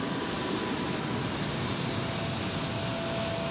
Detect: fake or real real